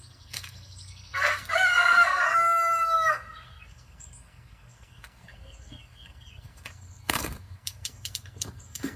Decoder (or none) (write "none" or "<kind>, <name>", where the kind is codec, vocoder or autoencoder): codec, SNAC